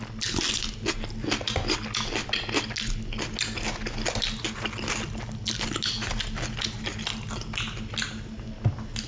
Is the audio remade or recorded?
recorded